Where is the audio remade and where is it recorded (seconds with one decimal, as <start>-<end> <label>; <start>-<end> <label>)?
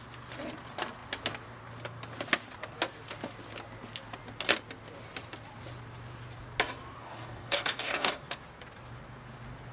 0.0-7.0 recorded; 7.0-8.1 remade; 8.1-9.7 recorded